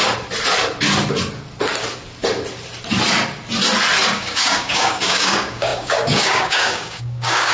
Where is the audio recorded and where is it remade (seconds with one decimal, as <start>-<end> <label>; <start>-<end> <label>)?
0.0-4.1 recorded; 4.1-7.5 remade